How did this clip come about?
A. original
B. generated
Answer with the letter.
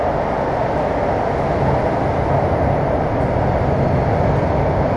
A